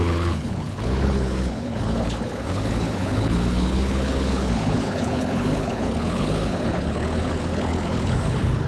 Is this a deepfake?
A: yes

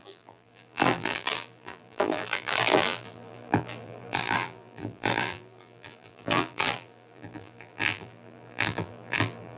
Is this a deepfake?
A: yes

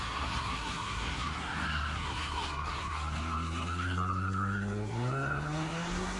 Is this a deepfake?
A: yes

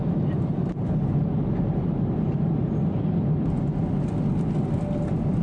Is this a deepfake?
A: no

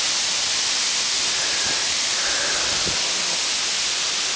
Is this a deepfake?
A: no